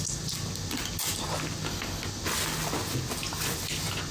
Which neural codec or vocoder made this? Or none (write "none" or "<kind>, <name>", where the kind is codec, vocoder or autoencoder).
none